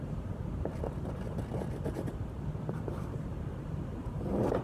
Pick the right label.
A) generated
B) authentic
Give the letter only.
A